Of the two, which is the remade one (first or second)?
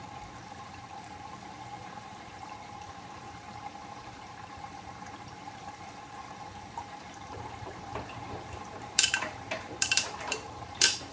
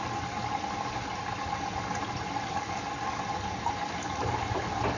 first